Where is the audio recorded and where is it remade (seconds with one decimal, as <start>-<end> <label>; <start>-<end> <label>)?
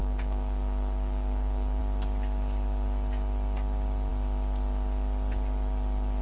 0.0-1.8 remade; 1.8-6.2 recorded